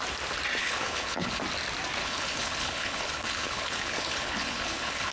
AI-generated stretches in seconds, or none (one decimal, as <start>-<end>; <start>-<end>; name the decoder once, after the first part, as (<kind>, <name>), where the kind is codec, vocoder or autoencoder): 0.6-1.4 (codec, HILCodec); 2.0-5.1